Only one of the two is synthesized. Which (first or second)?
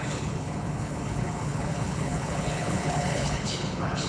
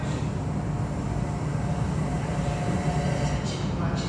first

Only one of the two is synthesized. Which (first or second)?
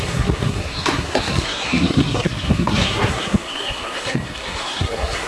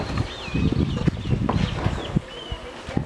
first